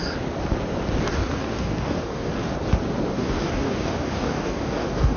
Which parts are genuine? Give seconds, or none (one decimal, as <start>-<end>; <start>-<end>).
0.0-1.4; 2.3-3.1